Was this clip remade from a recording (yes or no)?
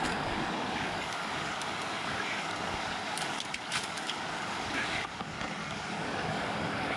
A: yes